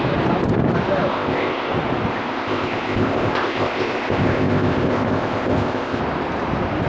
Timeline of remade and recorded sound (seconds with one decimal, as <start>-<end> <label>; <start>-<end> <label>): 0.0-1.1 recorded; 1.1-1.7 remade; 1.7-2.1 recorded; 2.1-6.0 remade; 6.0-6.9 recorded